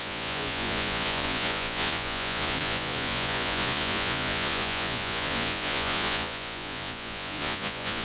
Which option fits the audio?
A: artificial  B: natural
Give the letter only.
A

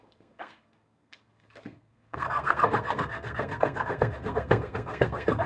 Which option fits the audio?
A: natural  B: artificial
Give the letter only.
B